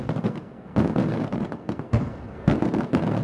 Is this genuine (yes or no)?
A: no